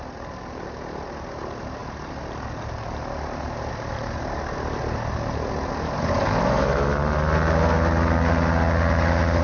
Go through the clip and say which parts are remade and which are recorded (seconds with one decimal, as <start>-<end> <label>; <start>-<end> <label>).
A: 0.0-9.4 recorded